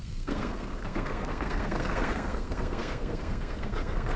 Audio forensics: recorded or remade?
remade